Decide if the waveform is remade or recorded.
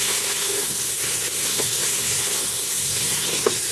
remade